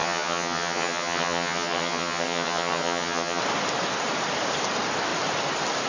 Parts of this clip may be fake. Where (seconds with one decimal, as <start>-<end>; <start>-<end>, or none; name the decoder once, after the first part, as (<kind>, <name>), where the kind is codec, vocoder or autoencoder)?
0.0-3.4 (vocoder, HiFi-GAN)